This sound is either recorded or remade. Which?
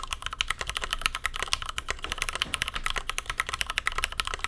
recorded